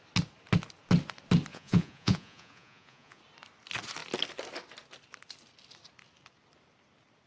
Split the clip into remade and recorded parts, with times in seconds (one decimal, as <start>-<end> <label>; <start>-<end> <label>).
0.0-1.5 recorded; 1.5-3.2 remade; 3.2-7.3 recorded